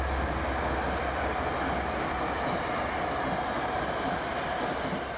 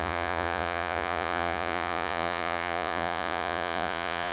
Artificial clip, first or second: second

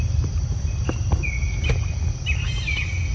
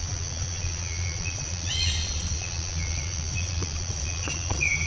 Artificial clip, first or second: second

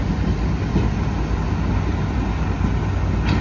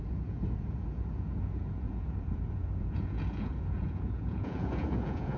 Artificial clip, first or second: second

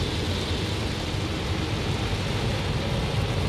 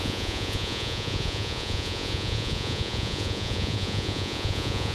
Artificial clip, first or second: second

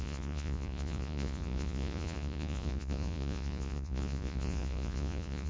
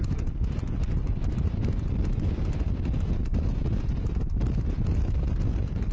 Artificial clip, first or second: first